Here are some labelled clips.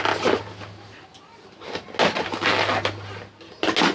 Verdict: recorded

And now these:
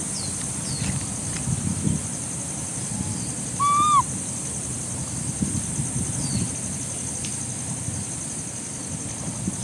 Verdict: recorded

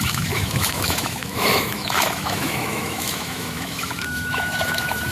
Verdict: remade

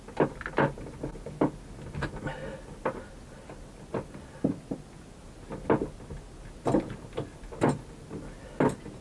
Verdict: recorded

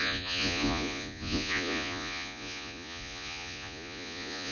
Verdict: remade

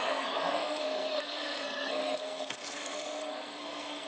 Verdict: remade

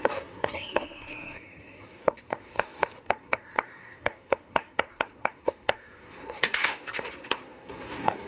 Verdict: remade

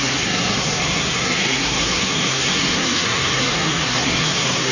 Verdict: remade